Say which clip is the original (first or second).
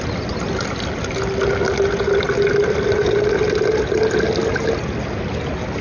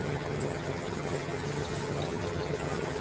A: first